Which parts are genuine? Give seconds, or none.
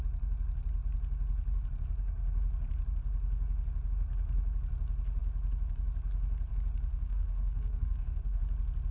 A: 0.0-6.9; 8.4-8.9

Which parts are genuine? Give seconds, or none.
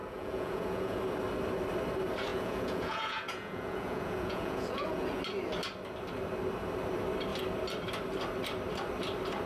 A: 1.0-2.3; 5.2-9.5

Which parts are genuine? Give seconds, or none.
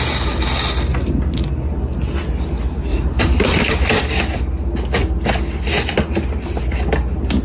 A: 0.0-2.9; 3.9-7.4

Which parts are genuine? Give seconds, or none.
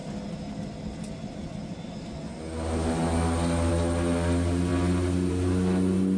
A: 0.0-6.2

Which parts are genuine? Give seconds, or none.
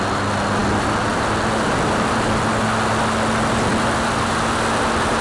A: 0.0-5.2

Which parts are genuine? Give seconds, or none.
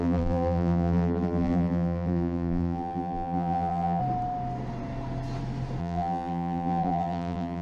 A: 4.0-5.8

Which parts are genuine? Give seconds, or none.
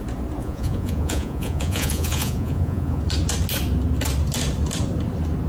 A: 0.0-0.4; 3.0-5.5